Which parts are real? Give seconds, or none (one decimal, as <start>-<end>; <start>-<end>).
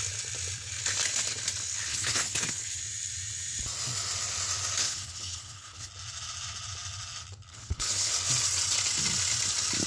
0.0-1.9; 2.8-4.8; 5.9-7.5; 8.1-9.9